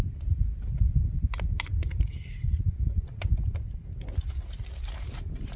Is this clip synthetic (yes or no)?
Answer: no